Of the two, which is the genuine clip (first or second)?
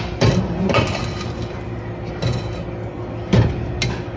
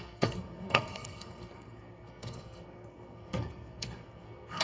first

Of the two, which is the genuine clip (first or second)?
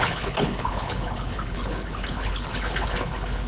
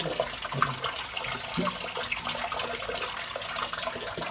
second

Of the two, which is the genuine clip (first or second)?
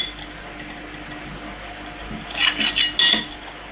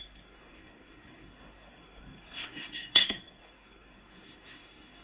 first